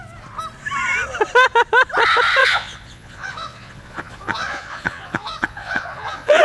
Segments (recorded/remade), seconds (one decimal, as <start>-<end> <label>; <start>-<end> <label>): 0.0-2.4 recorded; 2.4-6.4 remade